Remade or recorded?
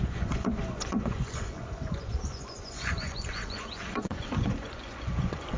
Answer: remade